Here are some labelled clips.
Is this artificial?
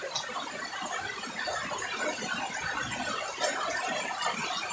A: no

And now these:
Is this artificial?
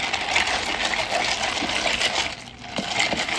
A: no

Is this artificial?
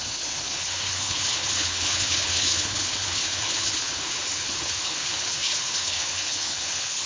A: yes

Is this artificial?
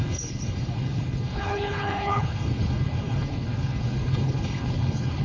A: yes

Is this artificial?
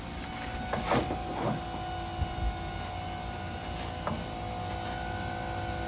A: no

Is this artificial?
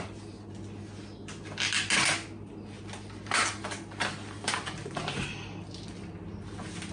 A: no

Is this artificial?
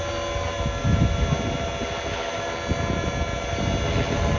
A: no